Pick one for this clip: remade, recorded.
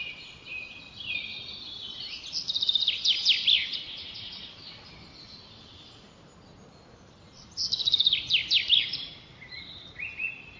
recorded